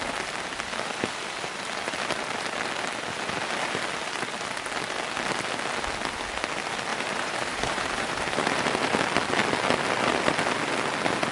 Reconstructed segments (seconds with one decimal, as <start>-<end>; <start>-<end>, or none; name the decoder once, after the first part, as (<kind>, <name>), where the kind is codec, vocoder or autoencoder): 6.9-9.0 (vocoder, BigVGAN v2)